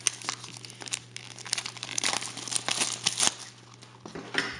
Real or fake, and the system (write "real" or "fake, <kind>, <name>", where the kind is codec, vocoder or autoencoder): real